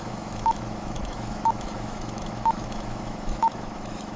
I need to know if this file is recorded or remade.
remade